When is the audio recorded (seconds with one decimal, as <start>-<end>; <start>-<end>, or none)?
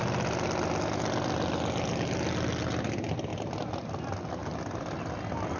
0.0-4.4; 5.1-5.6